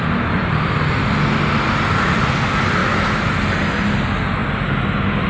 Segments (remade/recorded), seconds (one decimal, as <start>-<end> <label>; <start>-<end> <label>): 0.0-2.8 recorded; 2.8-3.3 remade; 3.3-5.3 recorded